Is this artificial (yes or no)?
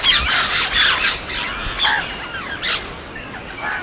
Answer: no